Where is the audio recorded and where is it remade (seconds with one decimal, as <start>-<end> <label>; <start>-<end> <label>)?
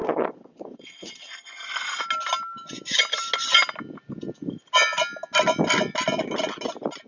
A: 0.0-1.3 remade; 1.3-7.1 recorded